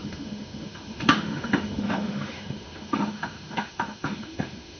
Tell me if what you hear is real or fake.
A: fake